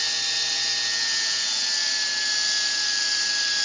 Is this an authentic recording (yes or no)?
yes